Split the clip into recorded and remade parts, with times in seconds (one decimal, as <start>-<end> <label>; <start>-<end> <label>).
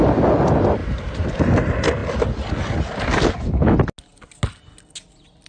0.0-0.8 recorded; 0.8-1.4 remade; 1.4-5.5 recorded